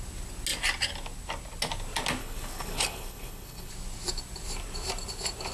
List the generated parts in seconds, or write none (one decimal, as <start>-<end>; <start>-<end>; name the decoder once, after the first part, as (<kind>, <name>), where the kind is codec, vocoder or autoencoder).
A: 2.2-3.7 (codec, HILCodec)